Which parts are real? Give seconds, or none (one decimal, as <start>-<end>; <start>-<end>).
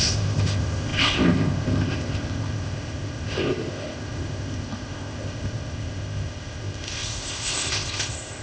none